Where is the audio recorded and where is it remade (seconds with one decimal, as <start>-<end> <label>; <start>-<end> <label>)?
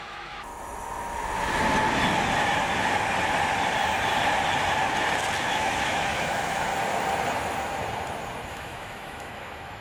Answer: 0.0-0.5 remade; 0.5-5.4 recorded; 5.4-6.7 remade; 6.7-8.5 recorded; 8.5-9.8 remade